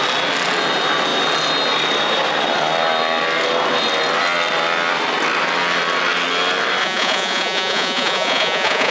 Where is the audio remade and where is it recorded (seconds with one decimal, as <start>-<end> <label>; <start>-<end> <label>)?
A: 0.0-6.8 recorded; 6.8-8.9 remade